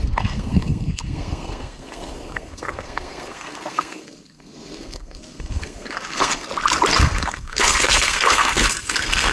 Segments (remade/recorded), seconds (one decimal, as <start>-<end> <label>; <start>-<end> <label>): 0.0-6.5 remade; 6.5-7.0 recorded; 7.0-9.3 remade